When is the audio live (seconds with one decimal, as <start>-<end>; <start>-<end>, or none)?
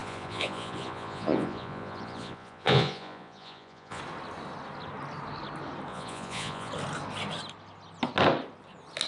4.0-5.9; 6.7-9.1